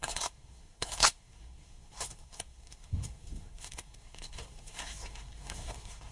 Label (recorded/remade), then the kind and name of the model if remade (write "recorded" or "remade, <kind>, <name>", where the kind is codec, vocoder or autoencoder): remade, codec, SNAC